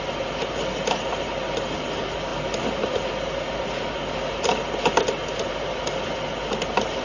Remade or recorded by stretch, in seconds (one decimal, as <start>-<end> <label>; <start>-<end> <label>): 0.0-7.0 recorded